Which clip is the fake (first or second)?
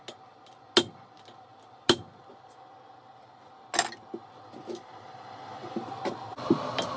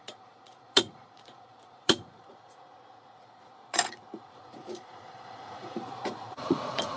second